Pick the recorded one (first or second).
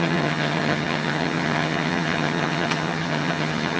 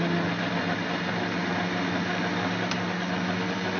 second